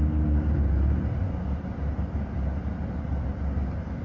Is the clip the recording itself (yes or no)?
yes